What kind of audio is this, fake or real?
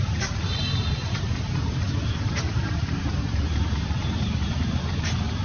fake